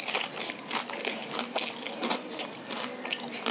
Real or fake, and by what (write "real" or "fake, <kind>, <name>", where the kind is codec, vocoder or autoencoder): real